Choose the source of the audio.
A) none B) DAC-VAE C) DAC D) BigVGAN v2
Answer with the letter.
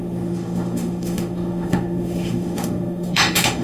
B